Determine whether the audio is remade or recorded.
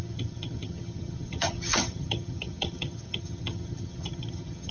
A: remade